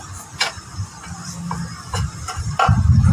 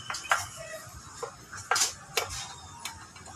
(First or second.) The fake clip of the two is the first